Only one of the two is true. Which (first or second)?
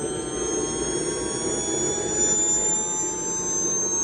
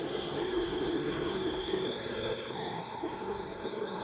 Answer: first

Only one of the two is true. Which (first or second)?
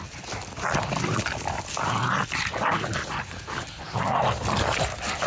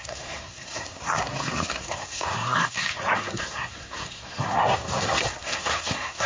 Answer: first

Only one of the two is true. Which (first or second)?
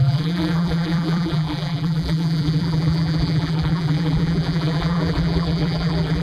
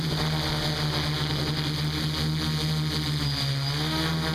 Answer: second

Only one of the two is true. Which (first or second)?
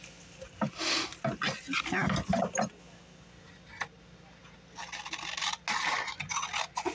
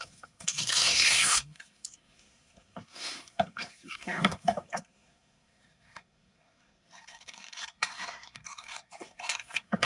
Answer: first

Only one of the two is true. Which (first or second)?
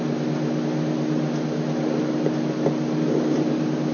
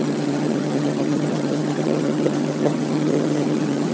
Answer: first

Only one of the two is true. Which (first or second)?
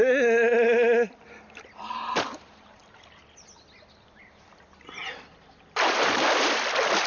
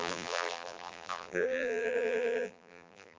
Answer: first